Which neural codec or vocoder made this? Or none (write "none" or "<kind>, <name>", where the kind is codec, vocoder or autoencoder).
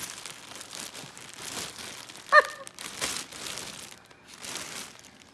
none